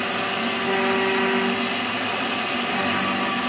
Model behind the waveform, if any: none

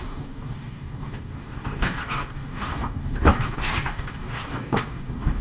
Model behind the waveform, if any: codec, DAC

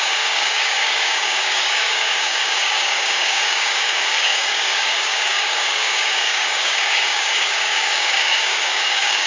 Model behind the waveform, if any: codec, DAC